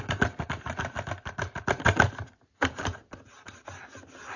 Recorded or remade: recorded